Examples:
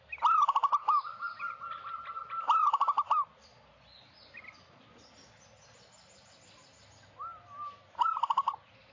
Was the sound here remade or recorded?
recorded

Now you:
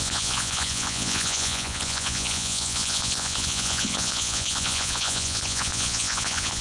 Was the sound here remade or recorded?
remade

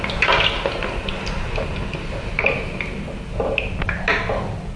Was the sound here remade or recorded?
recorded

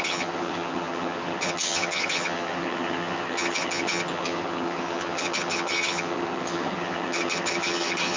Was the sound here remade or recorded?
remade